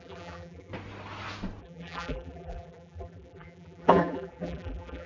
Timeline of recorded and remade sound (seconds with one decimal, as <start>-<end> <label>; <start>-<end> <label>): 0.0-0.7 remade; 0.7-1.6 recorded; 1.6-5.1 remade